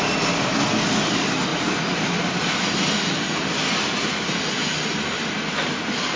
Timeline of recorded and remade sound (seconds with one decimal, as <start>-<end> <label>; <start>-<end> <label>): 0.0-6.2 recorded